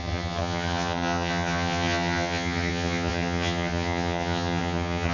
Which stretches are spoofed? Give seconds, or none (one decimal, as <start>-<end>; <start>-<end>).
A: 0.0-5.1